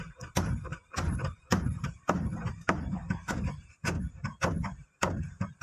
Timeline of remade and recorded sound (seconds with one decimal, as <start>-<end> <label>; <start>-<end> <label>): 0.0-5.6 remade